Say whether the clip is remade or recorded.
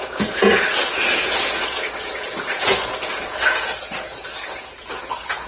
remade